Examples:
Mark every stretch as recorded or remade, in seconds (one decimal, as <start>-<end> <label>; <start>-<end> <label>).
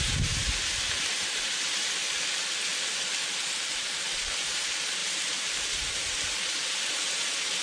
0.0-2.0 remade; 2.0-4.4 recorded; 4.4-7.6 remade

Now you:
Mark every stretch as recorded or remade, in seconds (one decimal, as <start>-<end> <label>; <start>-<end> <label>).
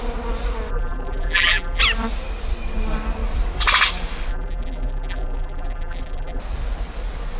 0.0-0.7 recorded; 0.7-1.8 remade; 1.8-4.3 recorded; 4.3-6.4 remade; 6.4-7.4 recorded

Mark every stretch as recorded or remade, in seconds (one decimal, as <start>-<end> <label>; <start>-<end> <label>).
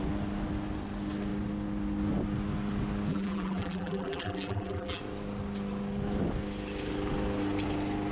0.0-3.1 recorded; 3.1-5.0 remade; 5.0-8.1 recorded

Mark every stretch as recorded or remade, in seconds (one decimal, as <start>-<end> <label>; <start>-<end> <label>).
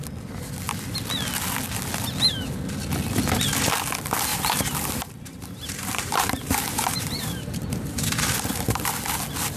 0.0-4.3 recorded; 4.3-8.9 remade; 8.9-9.6 recorded